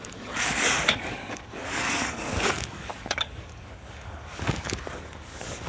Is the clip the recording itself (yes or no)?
no